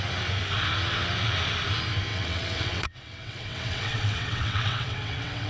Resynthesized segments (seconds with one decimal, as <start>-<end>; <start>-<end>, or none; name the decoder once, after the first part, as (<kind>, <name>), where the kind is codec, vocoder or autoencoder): 2.1-5.5 (vocoder, WaveNeXt)